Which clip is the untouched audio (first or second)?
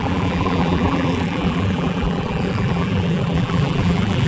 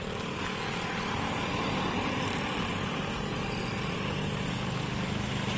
second